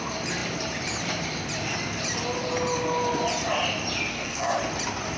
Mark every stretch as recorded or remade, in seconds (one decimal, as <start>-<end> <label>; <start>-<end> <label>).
0.0-4.1 recorded; 4.1-4.6 remade; 4.6-5.2 recorded